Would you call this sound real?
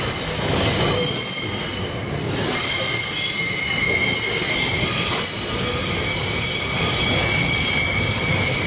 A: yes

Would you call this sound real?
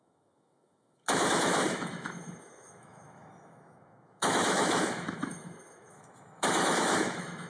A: no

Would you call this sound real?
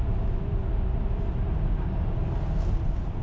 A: yes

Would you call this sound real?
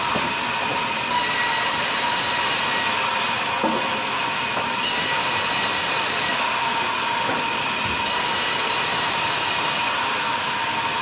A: yes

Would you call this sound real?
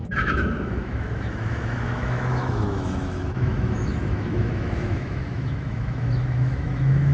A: no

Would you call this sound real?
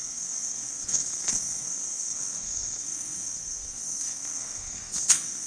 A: no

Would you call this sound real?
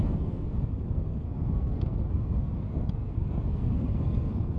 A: no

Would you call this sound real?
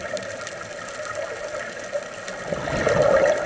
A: yes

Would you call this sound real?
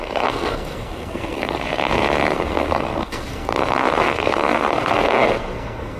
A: no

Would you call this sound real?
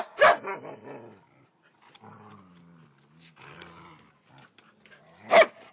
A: yes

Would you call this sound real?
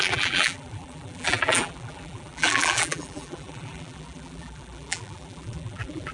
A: no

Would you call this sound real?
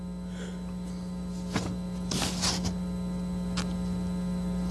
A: yes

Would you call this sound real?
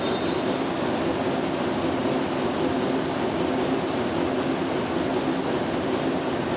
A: yes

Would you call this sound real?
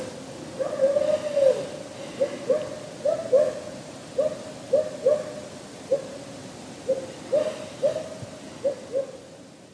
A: yes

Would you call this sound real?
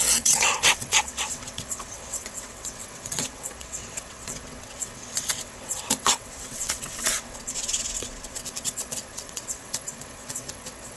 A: no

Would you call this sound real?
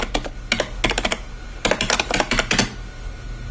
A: yes